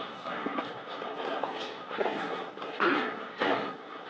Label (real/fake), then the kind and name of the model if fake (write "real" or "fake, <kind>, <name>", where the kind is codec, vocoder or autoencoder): fake, codec, SNAC